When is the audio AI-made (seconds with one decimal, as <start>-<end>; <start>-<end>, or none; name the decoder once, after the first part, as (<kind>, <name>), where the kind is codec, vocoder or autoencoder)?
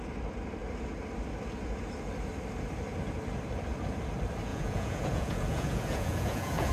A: 4.5-6.7 (vocoder, Vocos)